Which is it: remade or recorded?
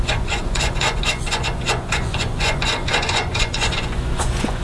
remade